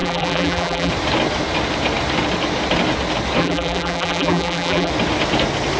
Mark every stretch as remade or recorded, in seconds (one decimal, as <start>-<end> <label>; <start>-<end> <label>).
0.0-0.9 remade; 0.9-3.4 recorded; 3.4-4.9 remade; 4.9-5.8 recorded